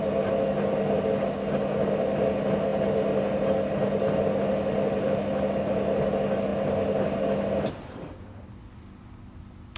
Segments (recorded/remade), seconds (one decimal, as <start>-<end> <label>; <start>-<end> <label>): 0.0-9.8 recorded